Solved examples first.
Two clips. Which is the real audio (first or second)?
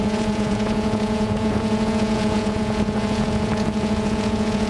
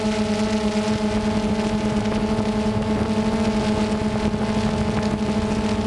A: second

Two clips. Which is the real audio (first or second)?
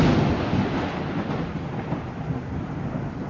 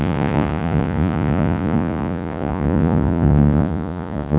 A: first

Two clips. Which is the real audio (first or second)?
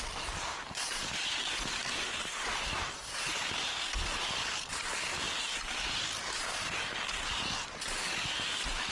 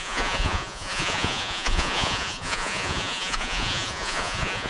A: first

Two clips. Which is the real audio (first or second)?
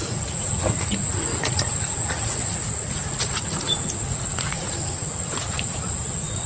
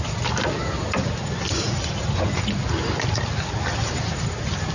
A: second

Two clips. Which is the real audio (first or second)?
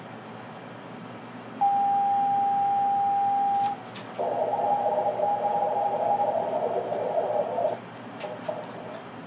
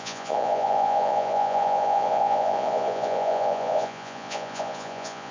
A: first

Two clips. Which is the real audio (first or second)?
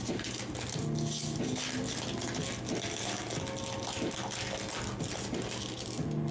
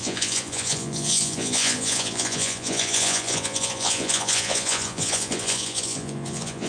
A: first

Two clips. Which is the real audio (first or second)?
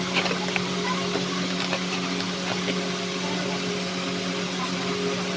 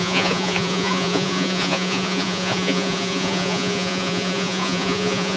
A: first